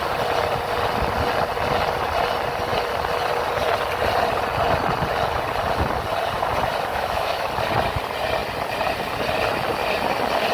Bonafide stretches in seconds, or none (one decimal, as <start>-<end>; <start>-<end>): 0.0-6.9; 7.5-10.5